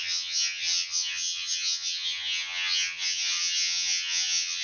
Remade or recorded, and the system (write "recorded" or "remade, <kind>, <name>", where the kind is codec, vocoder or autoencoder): remade, vocoder, HiFi-GAN